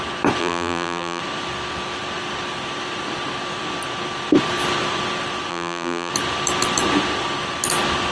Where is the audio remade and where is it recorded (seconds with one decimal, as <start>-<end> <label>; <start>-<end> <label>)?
0.0-0.4 recorded; 0.4-1.2 remade; 1.2-5.5 recorded; 5.5-6.1 remade; 6.1-8.1 recorded

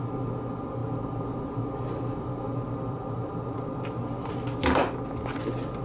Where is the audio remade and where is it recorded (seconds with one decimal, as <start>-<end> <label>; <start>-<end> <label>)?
0.0-0.8 recorded; 0.8-4.3 remade; 4.3-5.8 recorded